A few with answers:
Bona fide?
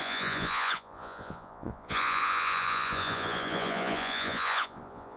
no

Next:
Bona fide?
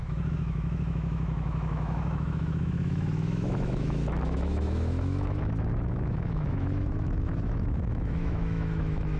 no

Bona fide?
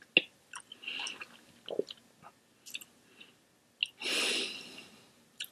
yes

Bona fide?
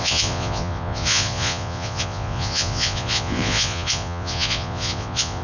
no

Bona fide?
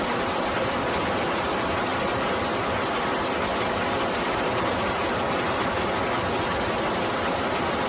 yes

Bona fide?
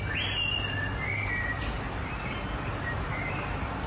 yes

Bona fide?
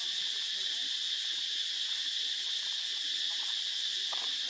yes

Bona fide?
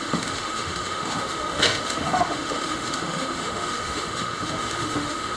no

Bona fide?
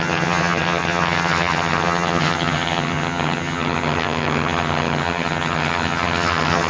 no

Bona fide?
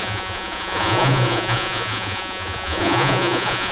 no